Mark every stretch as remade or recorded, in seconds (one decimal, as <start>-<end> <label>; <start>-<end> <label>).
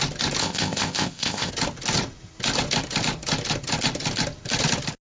0.0-0.4 recorded; 0.4-1.5 remade; 1.5-5.0 recorded